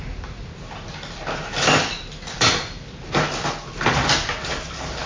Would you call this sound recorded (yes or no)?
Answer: yes